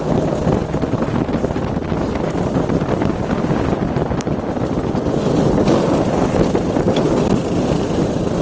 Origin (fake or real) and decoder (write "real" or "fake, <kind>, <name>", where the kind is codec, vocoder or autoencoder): real